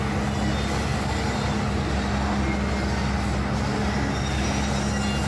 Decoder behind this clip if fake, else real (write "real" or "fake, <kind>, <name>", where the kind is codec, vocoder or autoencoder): real